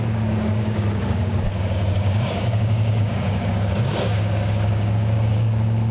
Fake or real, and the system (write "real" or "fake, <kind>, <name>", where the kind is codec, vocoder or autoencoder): fake, codec, DAC